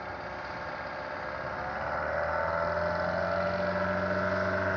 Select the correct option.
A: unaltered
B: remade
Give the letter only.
A